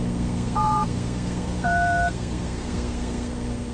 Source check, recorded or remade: remade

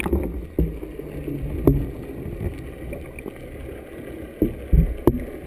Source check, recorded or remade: recorded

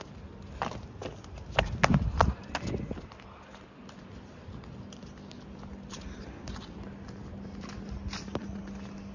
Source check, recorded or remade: recorded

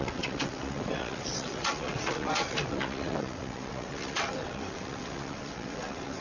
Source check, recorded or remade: remade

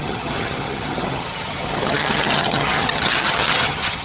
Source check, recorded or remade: remade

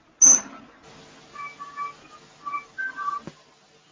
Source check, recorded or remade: recorded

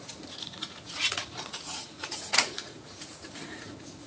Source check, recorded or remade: remade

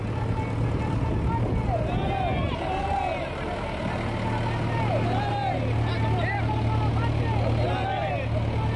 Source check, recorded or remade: recorded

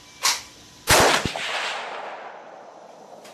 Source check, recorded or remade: recorded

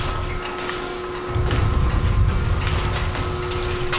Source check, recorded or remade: recorded